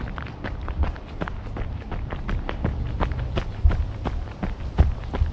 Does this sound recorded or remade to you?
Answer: recorded